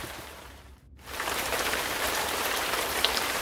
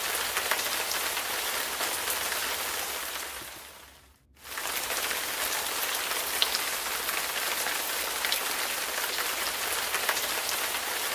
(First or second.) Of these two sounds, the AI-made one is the first